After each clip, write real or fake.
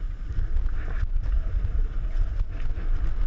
real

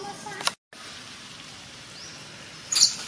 real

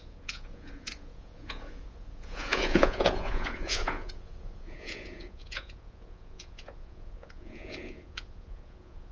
fake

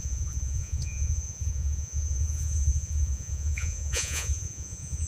fake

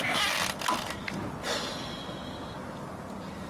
real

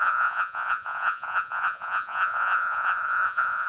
fake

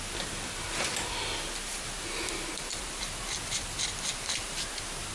real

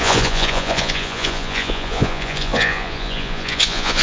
fake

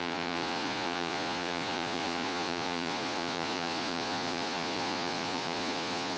fake